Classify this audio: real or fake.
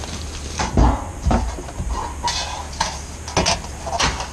real